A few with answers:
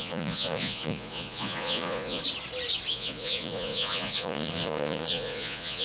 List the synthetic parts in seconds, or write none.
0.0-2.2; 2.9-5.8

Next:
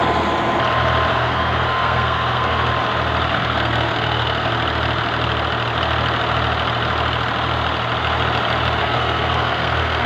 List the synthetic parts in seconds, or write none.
1.1-2.7; 3.3-4.5; 8.8-10.1

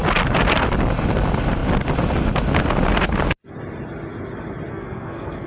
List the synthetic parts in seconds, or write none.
4.7-5.5

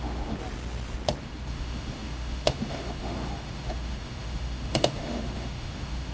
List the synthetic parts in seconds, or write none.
0.0-0.4; 1.2-6.1